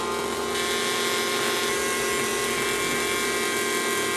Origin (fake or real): real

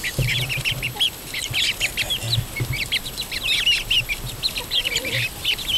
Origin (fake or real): fake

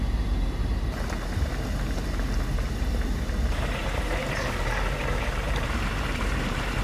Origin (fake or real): fake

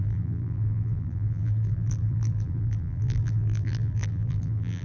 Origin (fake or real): fake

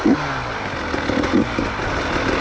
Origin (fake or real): real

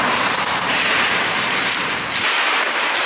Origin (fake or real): fake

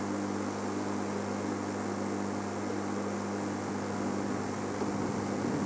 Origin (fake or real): real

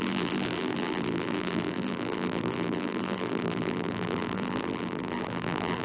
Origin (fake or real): fake